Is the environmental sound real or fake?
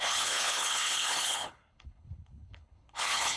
fake